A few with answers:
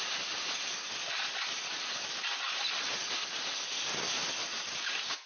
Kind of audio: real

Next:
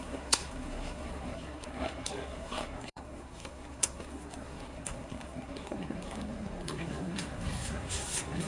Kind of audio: fake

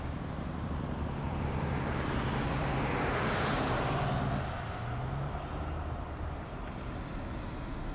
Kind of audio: real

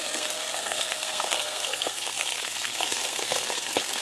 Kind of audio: fake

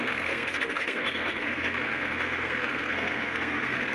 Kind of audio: fake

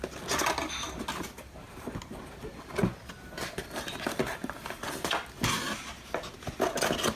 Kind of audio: real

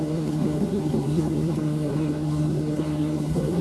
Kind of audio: fake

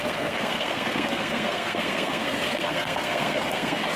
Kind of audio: fake